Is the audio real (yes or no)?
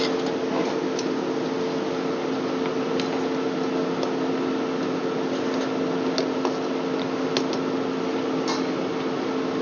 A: yes